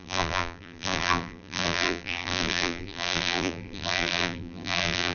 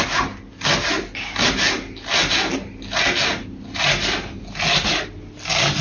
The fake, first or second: first